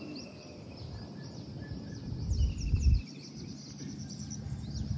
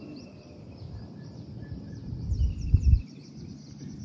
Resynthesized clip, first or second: second